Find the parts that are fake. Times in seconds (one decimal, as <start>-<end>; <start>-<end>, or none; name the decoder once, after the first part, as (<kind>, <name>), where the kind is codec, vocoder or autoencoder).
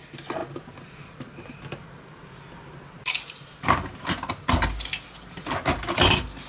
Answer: none